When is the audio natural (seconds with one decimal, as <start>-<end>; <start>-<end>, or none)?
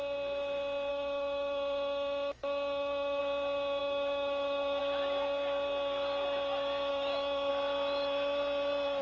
0.0-0.9; 3.2-3.8; 4.8-6.9; 7.5-9.0